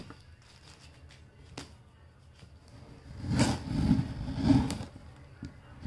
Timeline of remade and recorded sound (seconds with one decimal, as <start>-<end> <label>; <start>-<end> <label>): 0.0-5.9 recorded